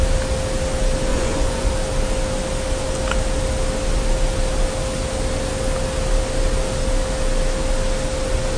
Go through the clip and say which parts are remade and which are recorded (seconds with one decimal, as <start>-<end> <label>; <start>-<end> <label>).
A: 0.0-1.1 recorded; 1.1-1.7 remade; 1.7-8.6 recorded